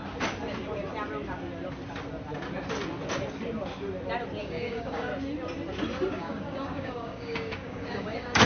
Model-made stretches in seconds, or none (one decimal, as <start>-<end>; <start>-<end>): 4.4-5.1; 6.1-8.5